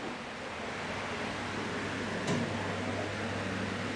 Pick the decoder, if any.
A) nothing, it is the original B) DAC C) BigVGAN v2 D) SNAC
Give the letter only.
A